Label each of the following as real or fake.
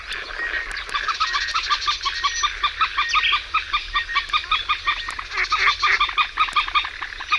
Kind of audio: real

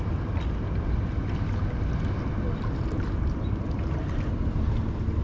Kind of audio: real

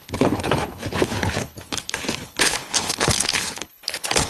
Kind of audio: fake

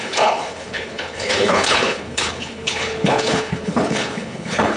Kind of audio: fake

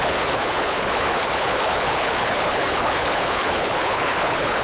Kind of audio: fake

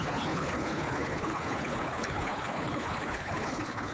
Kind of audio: fake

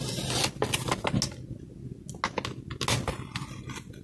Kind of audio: real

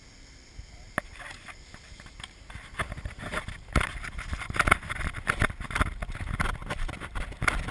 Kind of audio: real